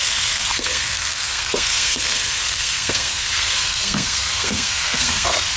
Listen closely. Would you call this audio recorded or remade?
remade